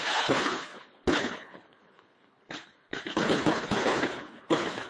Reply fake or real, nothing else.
fake